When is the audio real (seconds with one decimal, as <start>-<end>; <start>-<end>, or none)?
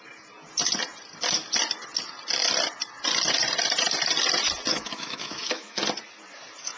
0.0-4.7; 5.8-6.8